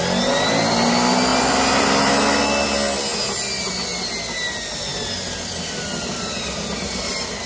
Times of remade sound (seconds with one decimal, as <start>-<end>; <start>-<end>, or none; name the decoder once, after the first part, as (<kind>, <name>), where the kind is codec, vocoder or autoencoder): 1.3-2.1 (vocoder, BigVGAN v2)